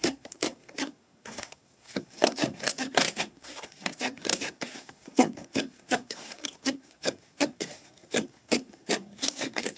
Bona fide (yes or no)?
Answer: no